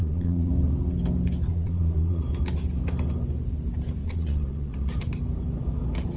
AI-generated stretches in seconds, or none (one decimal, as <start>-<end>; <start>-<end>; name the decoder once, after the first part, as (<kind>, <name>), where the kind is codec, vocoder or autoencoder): 0.0-0.5 (vocoder, Vocos); 1.5-2.2; 4.0-4.9